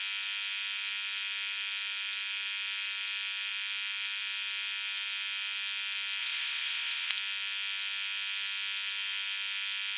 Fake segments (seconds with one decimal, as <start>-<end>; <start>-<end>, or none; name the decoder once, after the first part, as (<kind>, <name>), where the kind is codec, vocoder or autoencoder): 6.2-7.1 (vocoder, Vocos)